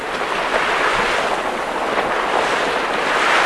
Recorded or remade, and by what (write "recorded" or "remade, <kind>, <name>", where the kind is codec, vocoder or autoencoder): recorded